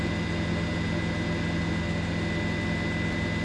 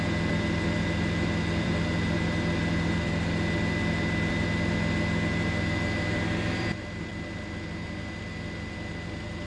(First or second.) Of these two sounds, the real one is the first